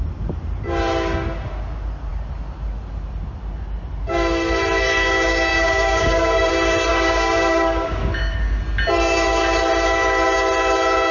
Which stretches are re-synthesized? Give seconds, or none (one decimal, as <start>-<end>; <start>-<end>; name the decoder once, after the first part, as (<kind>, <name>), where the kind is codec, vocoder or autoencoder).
5.5-6.5 (codec, DAC); 6.9-8.6